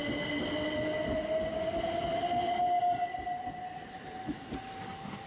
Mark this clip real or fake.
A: real